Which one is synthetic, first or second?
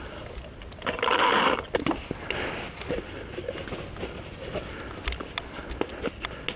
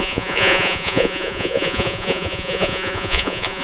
second